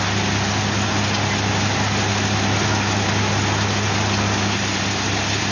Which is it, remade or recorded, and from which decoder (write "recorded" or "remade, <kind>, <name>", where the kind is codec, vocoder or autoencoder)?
recorded